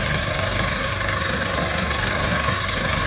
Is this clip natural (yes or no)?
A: no